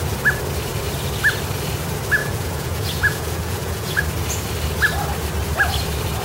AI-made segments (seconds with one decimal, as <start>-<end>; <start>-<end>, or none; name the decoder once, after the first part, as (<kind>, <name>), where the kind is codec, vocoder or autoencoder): 2.2-4.0 (vocoder, Vocos)